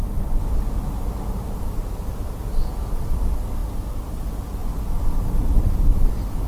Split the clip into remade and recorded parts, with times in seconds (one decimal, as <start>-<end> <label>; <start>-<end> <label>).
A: 0.0-6.5 recorded